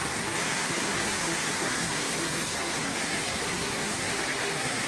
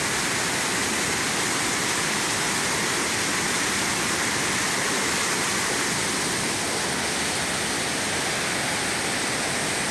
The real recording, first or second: second